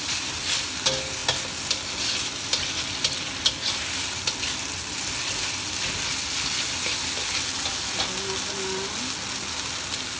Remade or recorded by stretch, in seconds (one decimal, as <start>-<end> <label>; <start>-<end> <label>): 0.0-10.2 recorded